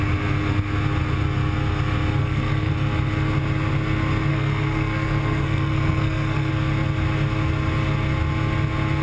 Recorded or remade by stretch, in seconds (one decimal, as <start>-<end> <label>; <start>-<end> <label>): 0.0-2.2 recorded; 2.2-2.7 remade; 2.7-4.3 recorded; 4.3-6.5 remade; 6.5-9.0 recorded